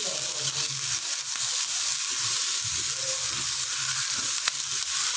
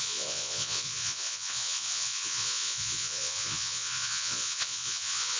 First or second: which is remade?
second